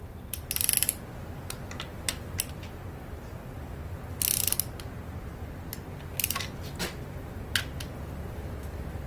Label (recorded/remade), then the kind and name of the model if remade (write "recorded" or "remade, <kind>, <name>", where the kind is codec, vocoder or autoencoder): recorded